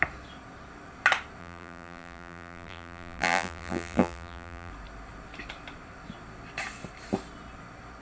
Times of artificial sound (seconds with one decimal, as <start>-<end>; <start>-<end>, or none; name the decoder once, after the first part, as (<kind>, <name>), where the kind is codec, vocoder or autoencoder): 1.4-4.7 (vocoder, BigVGAN v2)